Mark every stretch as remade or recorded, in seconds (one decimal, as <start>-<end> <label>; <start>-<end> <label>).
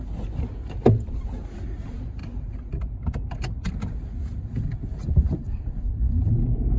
0.0-2.2 recorded; 2.2-6.3 remade; 6.3-6.8 recorded